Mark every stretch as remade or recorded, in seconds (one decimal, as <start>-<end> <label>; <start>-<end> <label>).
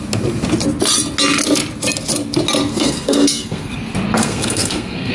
0.0-2.7 recorded; 2.7-3.7 remade; 3.7-4.2 recorded; 4.2-5.1 remade